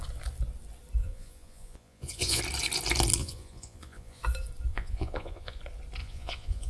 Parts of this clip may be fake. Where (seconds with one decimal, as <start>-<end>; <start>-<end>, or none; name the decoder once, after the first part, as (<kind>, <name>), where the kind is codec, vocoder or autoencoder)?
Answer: 1.0-2.4 (vocoder, Vocos); 3.2-4.2; 4.7-5.6; 6.0-6.7